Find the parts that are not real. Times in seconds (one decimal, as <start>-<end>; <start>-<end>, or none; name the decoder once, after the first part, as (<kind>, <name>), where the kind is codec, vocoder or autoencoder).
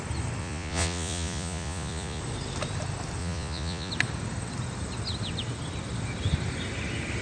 0.4-2.2 (vocoder, Vocos); 3.2-3.9